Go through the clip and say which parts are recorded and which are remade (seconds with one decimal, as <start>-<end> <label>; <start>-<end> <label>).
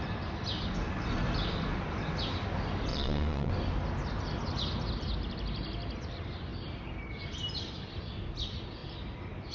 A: 0.0-2.9 recorded; 2.9-3.5 remade; 3.5-9.5 recorded